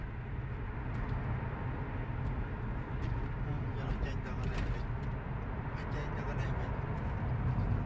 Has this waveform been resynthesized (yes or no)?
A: no